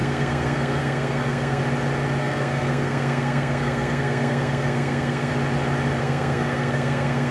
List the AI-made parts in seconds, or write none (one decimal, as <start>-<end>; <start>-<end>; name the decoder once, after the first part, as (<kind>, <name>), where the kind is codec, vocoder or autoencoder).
0.0-1.6 (codec, SNAC); 2.2-5.3; 6.0-7.3